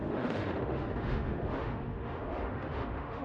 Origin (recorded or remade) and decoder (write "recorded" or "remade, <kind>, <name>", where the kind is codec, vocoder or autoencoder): remade, autoencoder, DAC-VAE